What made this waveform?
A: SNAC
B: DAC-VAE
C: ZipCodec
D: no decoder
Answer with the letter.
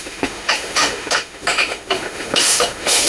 B